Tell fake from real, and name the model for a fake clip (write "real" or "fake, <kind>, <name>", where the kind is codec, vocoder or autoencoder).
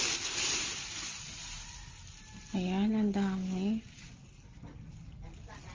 real